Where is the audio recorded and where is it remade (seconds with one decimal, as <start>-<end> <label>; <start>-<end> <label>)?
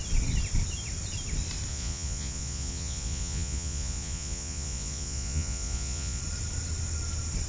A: 0.0-1.7 recorded; 1.7-6.2 remade; 6.2-7.5 recorded